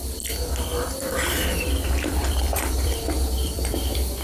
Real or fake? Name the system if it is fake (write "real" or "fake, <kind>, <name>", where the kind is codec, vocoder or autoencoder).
fake, vocoder, BigVGAN v2